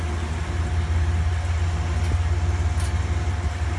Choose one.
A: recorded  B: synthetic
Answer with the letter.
A